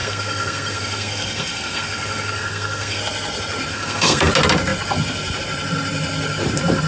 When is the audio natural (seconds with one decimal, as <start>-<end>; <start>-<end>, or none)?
3.0-3.7; 4.3-6.9